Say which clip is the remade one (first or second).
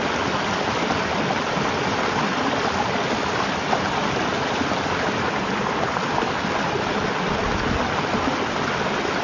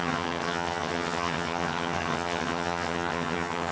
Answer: second